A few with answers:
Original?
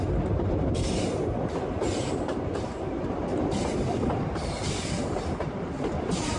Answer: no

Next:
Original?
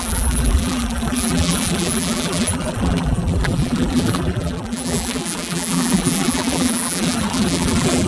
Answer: no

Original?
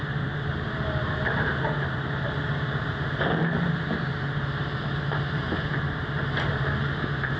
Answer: no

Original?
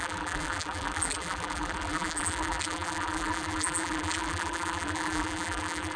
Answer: no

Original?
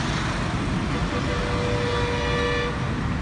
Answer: yes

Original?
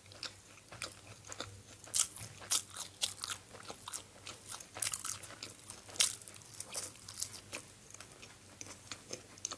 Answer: yes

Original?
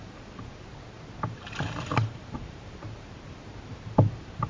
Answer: no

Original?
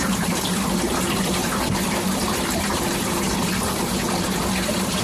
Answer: no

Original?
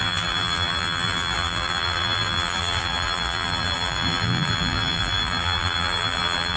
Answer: no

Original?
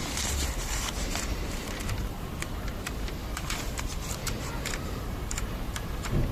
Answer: no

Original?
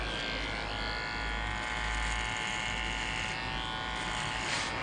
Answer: yes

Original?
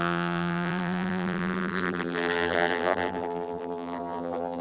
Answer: no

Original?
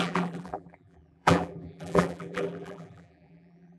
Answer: no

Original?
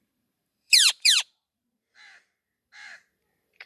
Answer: no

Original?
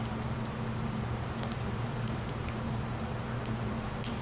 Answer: no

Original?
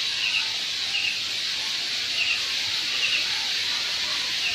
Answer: yes